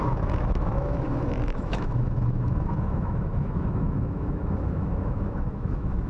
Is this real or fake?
fake